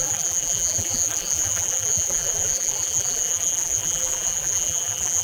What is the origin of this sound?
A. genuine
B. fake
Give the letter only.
B